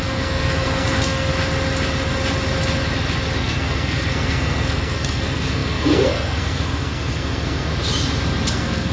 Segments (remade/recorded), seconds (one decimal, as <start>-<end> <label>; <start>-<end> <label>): 0.0-1.3 remade; 1.3-3.4 recorded; 3.4-7.7 remade; 7.7-8.5 recorded; 8.5-8.9 remade